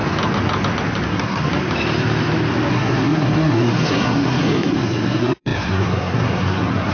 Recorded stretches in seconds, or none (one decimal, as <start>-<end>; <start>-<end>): 0.0-1.1; 1.5-2.7